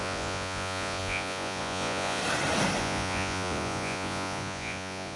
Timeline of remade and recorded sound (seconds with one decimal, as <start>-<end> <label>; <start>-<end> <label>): 0.0-2.2 remade; 2.2-2.8 recorded; 2.8-5.2 remade